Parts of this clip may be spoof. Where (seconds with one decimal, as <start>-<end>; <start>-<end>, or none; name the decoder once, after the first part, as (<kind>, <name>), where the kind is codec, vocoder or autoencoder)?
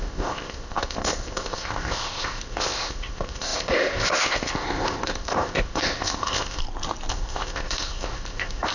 0.0-6.6 (codec, ZipCodec); 7.1-8.7